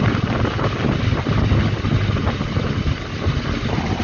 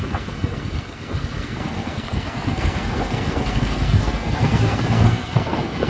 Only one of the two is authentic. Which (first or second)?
first